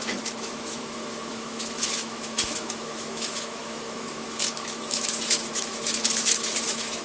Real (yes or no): no